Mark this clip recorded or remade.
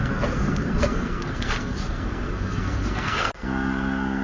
remade